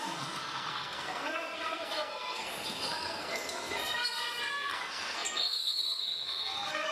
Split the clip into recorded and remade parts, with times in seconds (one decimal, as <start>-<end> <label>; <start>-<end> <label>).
0.0-6.9 remade